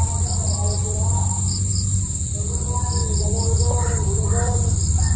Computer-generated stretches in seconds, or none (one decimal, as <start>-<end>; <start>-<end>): none